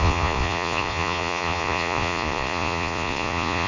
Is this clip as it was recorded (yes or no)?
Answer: no